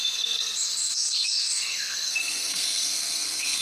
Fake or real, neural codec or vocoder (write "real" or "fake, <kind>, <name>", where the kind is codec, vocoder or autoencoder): fake, codec, SNAC